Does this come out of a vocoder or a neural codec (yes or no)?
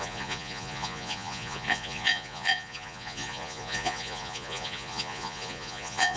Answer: yes